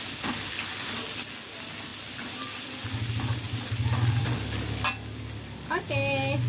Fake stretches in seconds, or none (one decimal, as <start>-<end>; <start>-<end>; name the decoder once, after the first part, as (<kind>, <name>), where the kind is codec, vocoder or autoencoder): none